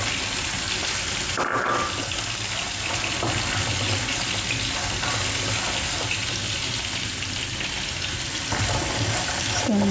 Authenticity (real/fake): real